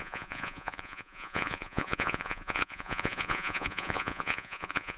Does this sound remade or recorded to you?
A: remade